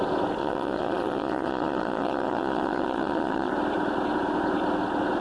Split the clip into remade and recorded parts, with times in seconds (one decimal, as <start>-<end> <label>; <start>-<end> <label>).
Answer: 0.0-0.4 recorded; 0.4-3.5 remade; 3.5-5.2 recorded